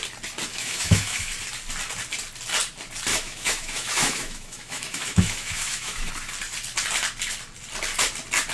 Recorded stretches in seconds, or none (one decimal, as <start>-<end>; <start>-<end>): 0.0-0.5; 1.3-3.1; 6.1-8.5